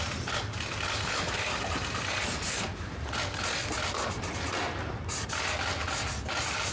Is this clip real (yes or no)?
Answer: yes